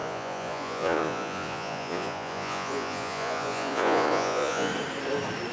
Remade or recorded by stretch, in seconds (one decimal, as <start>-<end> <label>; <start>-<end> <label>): 0.0-4.7 remade; 4.7-5.5 recorded